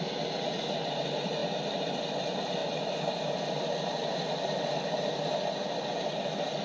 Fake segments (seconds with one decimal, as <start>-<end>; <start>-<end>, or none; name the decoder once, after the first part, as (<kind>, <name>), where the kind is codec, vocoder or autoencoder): none

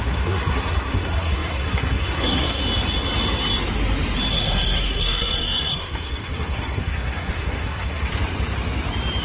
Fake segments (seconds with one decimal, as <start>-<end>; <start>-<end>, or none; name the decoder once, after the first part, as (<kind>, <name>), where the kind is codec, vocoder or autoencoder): 0.0-2.6 (codec, SNAC); 4.3-8.1

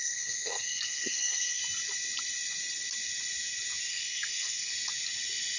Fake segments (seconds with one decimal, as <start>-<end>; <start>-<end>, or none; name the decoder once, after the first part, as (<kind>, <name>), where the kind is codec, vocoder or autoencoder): 0.0-1.6 (codec, SNAC); 3.9-4.7

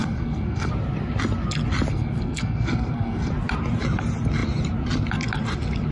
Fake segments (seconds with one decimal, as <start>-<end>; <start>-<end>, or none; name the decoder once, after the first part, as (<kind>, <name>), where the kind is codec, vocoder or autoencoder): 0.0-0.7 (codec, SNAC); 1.9-3.3

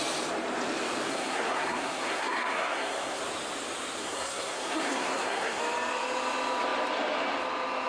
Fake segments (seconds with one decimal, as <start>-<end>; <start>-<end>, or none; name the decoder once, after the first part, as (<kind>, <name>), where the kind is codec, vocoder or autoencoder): 1.1-3.2 (codec, SNAC); 4.0-5.6

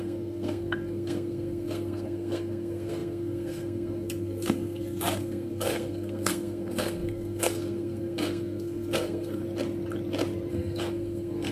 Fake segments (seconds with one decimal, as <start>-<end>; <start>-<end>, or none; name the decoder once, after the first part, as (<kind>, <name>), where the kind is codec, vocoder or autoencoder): 0.0-9.4 (codec, SNAC); 10.5-11.5

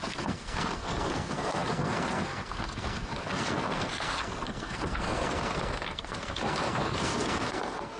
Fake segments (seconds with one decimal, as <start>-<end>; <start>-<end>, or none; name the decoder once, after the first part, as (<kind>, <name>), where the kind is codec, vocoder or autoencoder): 0.0-8.0 (codec, SNAC)

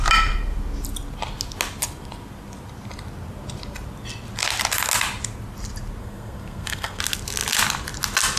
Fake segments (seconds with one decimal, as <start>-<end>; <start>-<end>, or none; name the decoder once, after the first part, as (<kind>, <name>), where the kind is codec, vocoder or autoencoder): 6.0-7.0 (codec, SNAC)